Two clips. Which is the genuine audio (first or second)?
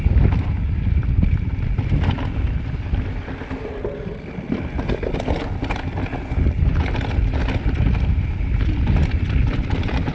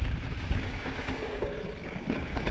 first